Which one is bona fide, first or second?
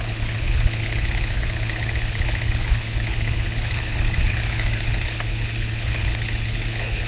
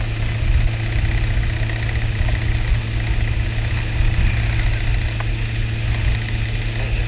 second